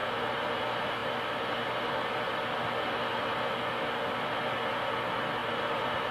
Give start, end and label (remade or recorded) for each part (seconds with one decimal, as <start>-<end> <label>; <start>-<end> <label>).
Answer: 0.0-0.6 remade; 0.6-5.4 recorded; 5.4-6.1 remade